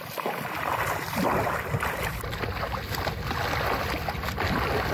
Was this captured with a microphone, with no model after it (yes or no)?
yes